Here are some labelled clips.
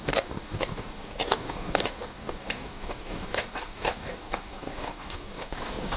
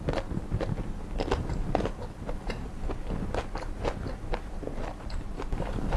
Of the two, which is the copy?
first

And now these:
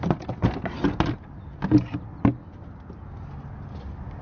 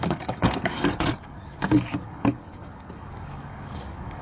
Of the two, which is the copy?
second